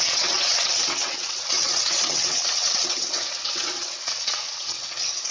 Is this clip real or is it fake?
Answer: fake